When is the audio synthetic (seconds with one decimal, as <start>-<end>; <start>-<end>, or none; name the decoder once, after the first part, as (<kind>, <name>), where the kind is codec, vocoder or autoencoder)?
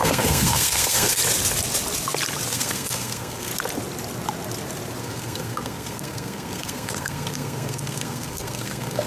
0.0-1.2 (codec, SNAC); 2.5-3.5; 5.0-9.1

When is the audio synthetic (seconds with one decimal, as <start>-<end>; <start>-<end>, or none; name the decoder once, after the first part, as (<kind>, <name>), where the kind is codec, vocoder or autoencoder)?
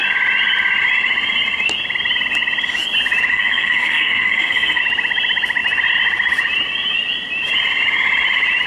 3.3-4.8 (codec, SNAC)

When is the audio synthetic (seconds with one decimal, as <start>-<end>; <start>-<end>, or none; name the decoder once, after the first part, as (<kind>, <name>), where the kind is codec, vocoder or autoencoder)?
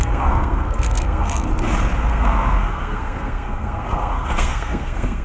0.0-1.5 (codec, SNAC); 2.1-5.2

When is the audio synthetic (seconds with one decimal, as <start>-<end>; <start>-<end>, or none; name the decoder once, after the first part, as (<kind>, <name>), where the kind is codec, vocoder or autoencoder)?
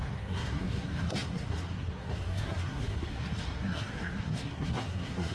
0.0-5.3 (codec, SNAC)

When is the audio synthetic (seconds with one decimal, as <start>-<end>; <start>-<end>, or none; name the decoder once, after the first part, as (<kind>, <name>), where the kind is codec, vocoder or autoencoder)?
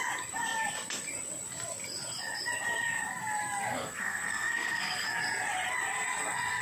3.7-5.2 (codec, SNAC)